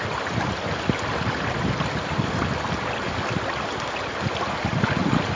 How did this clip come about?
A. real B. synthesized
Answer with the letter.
A